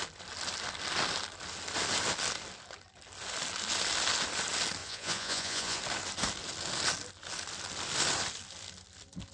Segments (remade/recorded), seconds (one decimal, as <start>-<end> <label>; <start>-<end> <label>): 0.0-4.8 recorded; 4.8-5.8 remade; 5.8-9.3 recorded